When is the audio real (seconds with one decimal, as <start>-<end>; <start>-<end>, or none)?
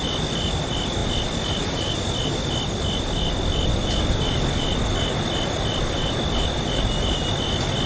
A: 0.0-7.9